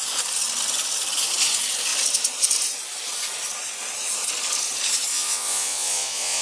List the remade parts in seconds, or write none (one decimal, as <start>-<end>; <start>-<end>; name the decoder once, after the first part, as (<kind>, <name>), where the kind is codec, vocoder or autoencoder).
5.1-6.4 (vocoder, Vocos)